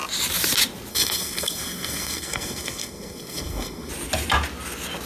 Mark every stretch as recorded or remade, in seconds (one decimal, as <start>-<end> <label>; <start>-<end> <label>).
0.0-0.9 recorded; 0.9-3.9 remade; 3.9-5.1 recorded